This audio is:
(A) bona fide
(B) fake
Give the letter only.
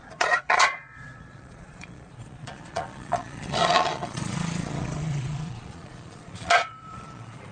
B